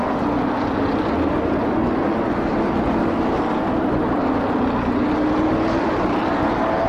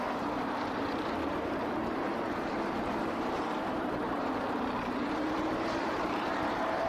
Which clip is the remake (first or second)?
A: second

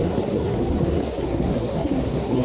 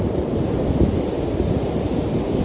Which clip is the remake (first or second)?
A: first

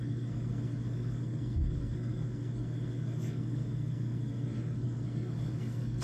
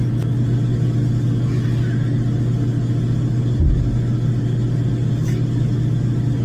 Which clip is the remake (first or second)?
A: first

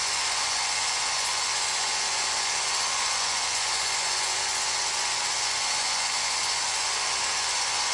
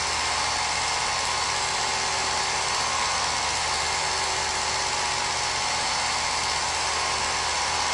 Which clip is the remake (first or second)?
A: first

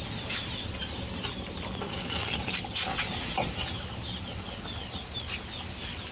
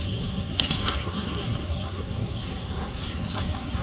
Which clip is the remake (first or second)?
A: second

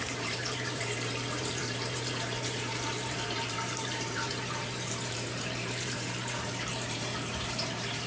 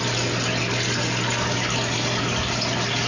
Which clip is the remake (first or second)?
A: first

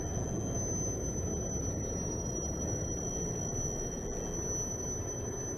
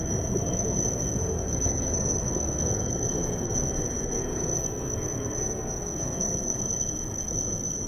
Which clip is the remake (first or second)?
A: second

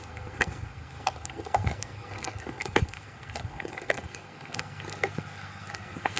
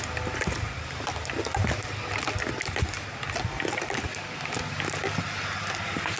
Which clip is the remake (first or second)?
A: first